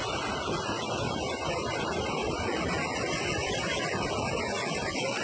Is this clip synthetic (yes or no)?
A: no